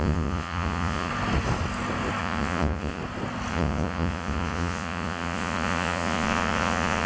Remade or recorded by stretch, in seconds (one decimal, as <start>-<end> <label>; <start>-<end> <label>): 0.0-1.1 remade; 1.1-2.2 recorded; 2.2-3.0 remade; 3.0-3.5 recorded; 3.5-7.1 remade